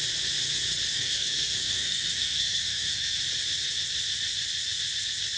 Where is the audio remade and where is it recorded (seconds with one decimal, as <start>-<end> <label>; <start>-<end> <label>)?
0.0-0.9 recorded; 0.9-3.2 remade; 3.2-5.4 recorded